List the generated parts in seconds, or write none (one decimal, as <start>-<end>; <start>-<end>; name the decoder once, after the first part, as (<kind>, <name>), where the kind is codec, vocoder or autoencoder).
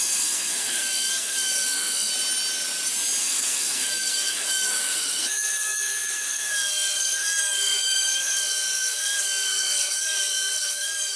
0.0-2.1 (codec, SNAC); 3.2-11.2